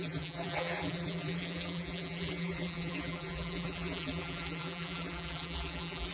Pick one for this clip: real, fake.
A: fake